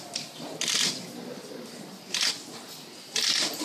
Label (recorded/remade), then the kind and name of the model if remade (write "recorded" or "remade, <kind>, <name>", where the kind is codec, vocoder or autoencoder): recorded